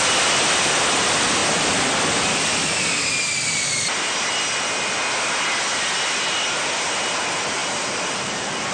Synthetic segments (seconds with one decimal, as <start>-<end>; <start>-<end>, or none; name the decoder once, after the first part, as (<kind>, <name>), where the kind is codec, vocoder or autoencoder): none